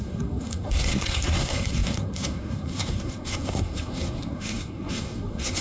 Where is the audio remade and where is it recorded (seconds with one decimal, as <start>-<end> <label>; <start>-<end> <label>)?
0.0-5.6 remade